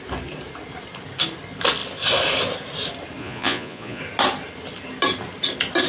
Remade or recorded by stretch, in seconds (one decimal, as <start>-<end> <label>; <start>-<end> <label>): 0.0-3.2 recorded; 3.2-4.0 remade; 4.0-5.9 recorded